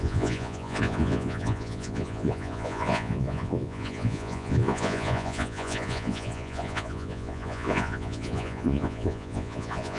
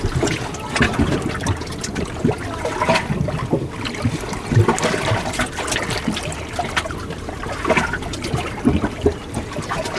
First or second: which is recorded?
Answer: second